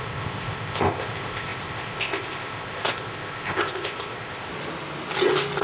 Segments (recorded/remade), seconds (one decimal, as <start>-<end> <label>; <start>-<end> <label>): 0.0-4.5 remade; 4.5-5.6 recorded